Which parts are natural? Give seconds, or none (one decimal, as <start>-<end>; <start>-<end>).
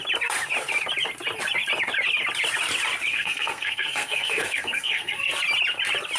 0.0-3.1; 5.3-6.2